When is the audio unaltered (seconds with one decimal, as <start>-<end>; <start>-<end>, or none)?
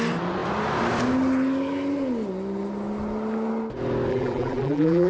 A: 0.0-4.1